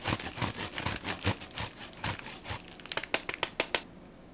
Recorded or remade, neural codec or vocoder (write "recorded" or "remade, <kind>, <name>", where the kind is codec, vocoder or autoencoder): recorded